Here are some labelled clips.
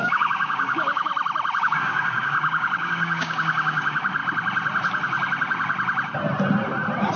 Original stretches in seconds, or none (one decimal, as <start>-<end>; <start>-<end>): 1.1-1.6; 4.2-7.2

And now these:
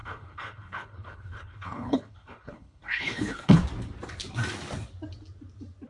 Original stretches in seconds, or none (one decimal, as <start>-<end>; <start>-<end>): 3.6-5.9

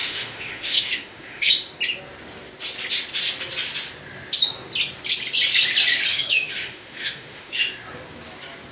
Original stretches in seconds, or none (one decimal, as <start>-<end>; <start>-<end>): 1.5-6.1; 7.6-8.7